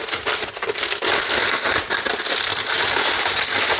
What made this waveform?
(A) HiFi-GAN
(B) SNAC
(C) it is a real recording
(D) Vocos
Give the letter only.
C